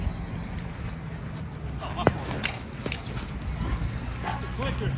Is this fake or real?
real